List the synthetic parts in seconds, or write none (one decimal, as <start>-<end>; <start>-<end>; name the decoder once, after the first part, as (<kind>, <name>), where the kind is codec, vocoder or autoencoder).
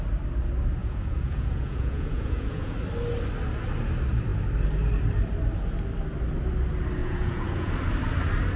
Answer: 0.8-2.7 (vocoder, Vocos); 7.0-7.7